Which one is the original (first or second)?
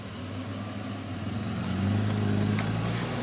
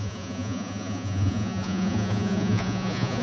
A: first